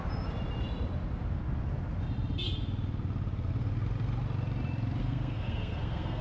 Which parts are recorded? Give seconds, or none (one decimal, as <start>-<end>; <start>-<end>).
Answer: 0.0-5.0